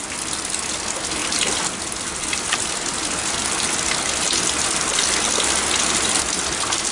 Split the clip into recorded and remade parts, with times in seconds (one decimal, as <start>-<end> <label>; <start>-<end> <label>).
0.0-6.9 recorded

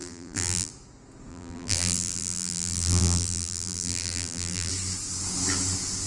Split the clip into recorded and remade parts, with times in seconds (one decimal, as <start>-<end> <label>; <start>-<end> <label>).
0.0-0.7 remade; 0.7-1.3 recorded; 1.3-4.7 remade; 4.7-6.1 recorded

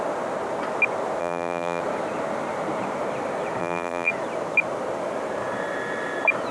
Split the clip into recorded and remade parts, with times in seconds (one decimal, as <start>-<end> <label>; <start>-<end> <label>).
0.0-1.2 recorded; 1.2-1.8 remade; 1.8-3.6 recorded; 3.6-4.1 remade; 4.1-6.5 recorded

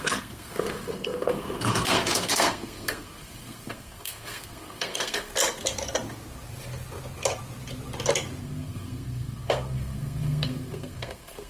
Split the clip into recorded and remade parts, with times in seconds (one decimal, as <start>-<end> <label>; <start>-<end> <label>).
0.0-5.3 remade; 5.3-8.4 recorded; 8.4-11.5 remade